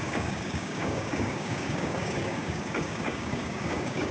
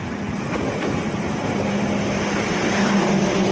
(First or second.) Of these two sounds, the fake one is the first